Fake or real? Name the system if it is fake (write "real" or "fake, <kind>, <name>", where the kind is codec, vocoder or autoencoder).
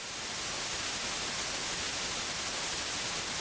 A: real